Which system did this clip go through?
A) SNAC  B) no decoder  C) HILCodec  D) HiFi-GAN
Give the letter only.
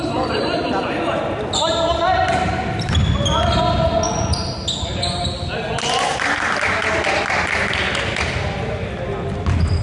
B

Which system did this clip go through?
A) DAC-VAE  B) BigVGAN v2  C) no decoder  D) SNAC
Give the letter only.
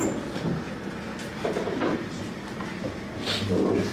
C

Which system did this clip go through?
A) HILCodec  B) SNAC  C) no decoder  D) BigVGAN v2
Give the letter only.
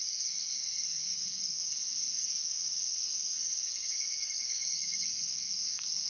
B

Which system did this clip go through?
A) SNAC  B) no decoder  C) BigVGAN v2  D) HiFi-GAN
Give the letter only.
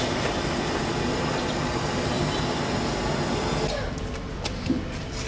B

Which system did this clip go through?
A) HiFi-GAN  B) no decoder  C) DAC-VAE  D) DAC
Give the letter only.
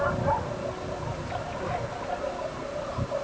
B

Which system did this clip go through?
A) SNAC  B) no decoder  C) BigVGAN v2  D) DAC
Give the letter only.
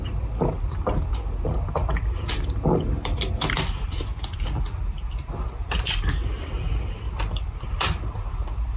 B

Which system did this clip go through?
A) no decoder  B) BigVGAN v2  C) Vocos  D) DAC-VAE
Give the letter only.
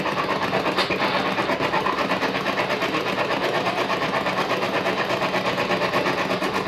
A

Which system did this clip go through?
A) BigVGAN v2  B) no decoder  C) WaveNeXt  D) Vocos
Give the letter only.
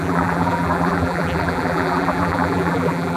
A